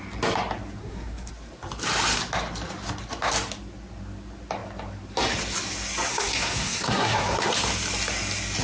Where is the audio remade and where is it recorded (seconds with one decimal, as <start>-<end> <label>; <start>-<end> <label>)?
0.0-0.8 recorded; 0.8-1.3 remade; 1.3-6.1 recorded; 6.1-7.5 remade; 7.5-8.6 recorded